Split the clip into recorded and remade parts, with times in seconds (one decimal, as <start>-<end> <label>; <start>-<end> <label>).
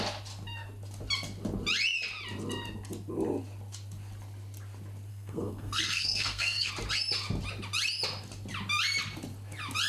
0.0-5.1 recorded; 5.1-6.7 remade; 6.7-9.9 recorded